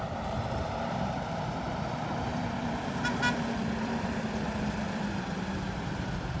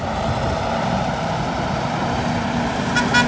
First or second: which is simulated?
first